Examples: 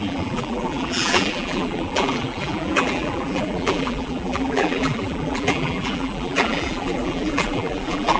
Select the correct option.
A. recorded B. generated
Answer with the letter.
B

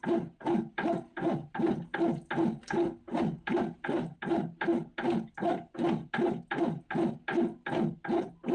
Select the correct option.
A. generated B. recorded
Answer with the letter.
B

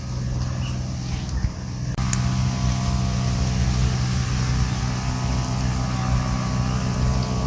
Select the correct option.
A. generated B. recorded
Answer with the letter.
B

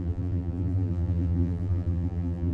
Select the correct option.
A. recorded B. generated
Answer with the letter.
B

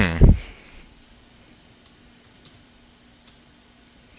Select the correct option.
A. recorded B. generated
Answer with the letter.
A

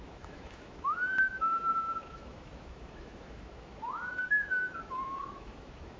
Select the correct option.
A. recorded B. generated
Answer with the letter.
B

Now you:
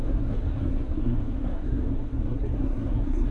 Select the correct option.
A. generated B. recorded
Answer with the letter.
A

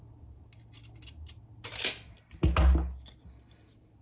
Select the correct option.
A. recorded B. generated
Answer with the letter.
A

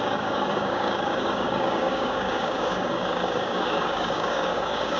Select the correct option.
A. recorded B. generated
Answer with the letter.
B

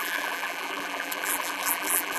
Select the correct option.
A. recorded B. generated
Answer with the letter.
B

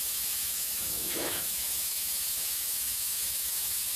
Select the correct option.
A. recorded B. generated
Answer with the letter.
B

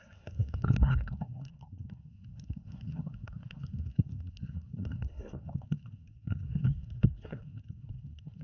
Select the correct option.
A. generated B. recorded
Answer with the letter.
A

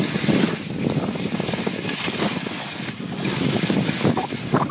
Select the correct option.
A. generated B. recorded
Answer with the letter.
B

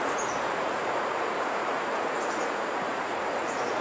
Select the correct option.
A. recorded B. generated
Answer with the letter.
B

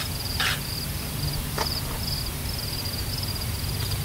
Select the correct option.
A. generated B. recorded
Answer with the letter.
B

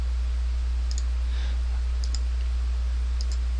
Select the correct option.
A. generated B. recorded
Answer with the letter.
B